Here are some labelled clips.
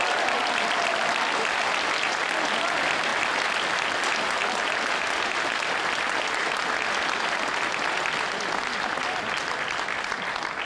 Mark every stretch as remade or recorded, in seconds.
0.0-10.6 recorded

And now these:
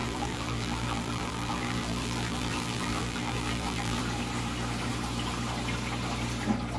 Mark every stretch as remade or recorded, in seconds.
0.0-4.0 remade; 4.0-6.8 recorded

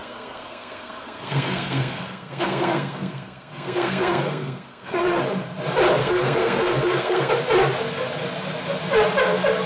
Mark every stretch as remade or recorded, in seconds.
0.0-5.2 remade; 5.2-6.0 recorded; 6.0-7.3 remade; 7.3-9.7 recorded

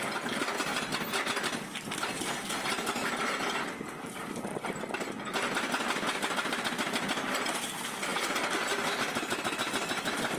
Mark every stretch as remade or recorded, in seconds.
0.0-10.4 recorded

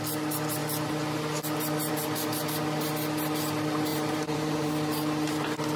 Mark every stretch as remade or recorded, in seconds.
0.0-3.9 recorded; 3.9-4.7 remade; 4.7-5.8 recorded